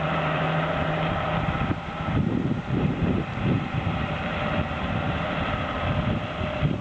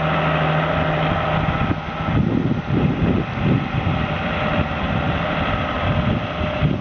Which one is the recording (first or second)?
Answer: second